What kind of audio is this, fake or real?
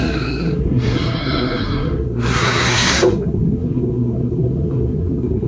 fake